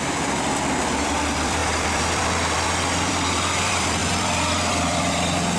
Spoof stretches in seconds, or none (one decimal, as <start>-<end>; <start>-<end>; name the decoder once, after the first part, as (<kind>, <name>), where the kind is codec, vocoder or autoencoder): 0.0-5.6 (vocoder, BigVGAN v2)